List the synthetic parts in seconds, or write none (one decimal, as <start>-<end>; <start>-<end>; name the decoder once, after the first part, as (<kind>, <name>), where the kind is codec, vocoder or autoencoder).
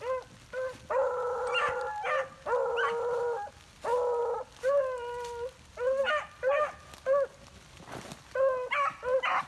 none